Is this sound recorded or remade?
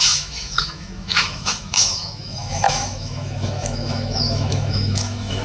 remade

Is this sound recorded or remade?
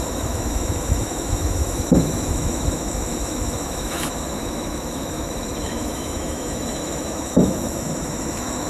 remade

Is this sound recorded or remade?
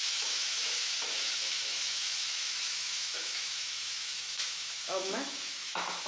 remade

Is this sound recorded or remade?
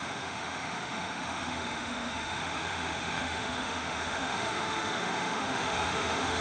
remade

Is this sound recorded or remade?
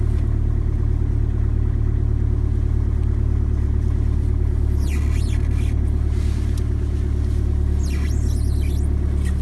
recorded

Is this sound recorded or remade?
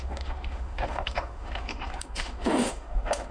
remade